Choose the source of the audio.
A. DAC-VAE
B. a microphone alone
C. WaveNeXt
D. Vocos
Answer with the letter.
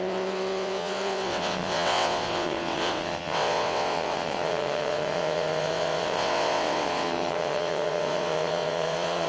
C